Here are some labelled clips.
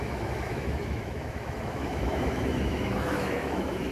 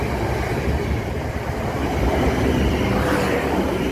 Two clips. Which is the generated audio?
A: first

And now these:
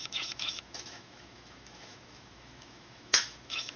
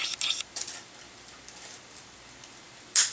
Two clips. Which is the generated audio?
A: first